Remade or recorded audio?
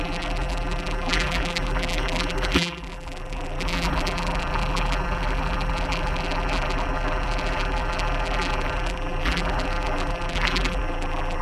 remade